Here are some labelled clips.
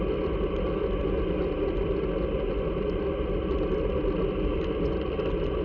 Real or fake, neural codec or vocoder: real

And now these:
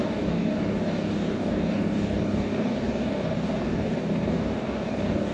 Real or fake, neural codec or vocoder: fake, codec, DAC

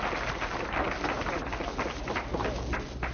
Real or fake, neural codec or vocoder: real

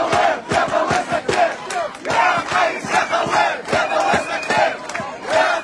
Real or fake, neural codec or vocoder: real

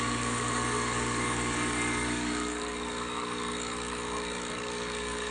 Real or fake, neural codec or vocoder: fake, codec, DAC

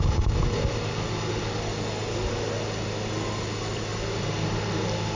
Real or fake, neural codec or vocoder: real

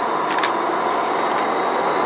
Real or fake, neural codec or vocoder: real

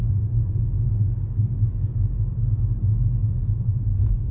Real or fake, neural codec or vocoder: fake, codec, DAC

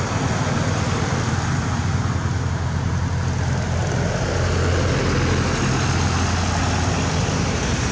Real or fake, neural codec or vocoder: real